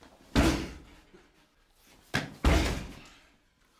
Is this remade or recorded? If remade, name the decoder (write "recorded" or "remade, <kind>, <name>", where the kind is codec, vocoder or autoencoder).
recorded